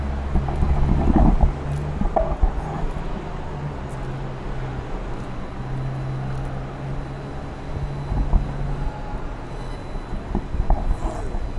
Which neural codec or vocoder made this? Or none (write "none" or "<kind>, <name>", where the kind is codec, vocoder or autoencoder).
none